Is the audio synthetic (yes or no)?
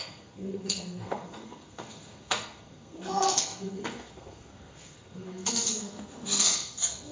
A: yes